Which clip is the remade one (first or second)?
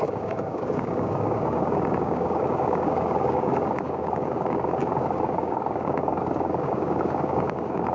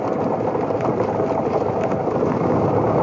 first